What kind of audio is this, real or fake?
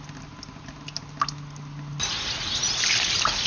real